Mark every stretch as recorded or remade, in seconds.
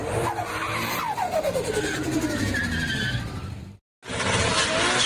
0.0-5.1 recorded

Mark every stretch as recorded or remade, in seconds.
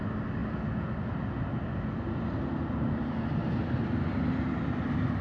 0.0-5.2 recorded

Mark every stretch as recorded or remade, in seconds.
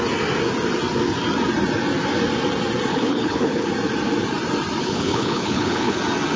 0.0-2.9 recorded; 2.9-3.7 remade; 3.7-4.8 recorded; 4.8-6.0 remade; 6.0-6.4 recorded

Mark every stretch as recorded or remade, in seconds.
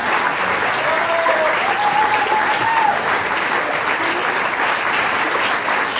0.0-6.0 recorded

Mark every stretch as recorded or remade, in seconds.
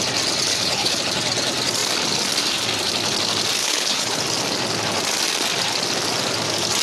0.0-0.5 recorded; 0.5-1.0 remade; 1.0-3.6 recorded; 3.6-4.2 remade; 4.2-6.8 recorded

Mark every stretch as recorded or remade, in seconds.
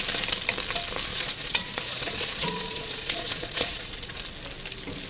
0.0-1.1 recorded; 1.1-4.2 remade; 4.2-5.1 recorded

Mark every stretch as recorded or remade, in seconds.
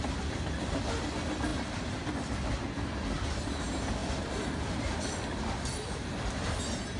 0.0-7.0 recorded